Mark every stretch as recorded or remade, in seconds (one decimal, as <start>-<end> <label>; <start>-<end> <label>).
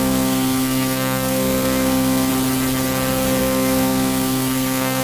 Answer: 0.0-2.3 remade; 2.3-3.4 recorded; 3.4-5.0 remade